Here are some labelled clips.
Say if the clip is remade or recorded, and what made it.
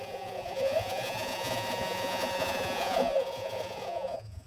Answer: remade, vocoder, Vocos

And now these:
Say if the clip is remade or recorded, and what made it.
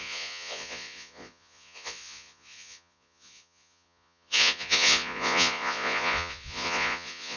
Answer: remade, vocoder, Vocos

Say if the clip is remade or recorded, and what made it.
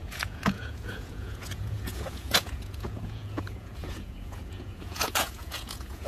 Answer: remade, vocoder, Vocos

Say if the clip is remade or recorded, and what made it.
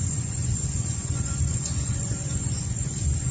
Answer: remade, vocoder, Vocos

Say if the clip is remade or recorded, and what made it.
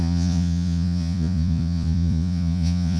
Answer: remade, vocoder, Vocos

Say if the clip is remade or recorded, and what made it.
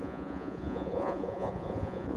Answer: remade, vocoder, Vocos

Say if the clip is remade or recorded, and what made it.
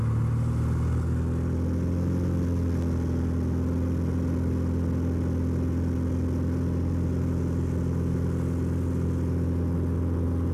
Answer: recorded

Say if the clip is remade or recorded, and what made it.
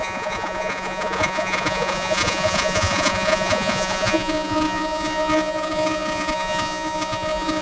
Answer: remade, vocoder, Vocos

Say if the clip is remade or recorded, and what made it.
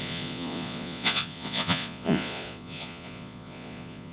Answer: remade, vocoder, Vocos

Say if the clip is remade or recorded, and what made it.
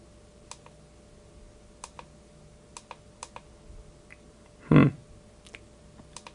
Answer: recorded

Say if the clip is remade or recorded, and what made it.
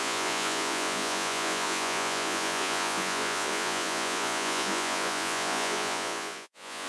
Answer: remade, vocoder, Vocos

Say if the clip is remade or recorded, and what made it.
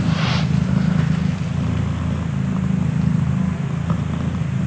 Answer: recorded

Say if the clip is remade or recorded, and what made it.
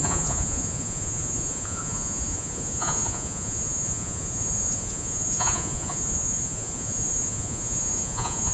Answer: remade, vocoder, Vocos